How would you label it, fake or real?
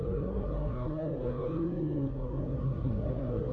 fake